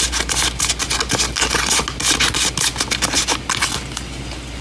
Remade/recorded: recorded